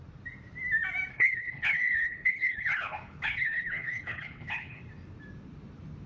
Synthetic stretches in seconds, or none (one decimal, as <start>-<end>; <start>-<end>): 1.1-4.8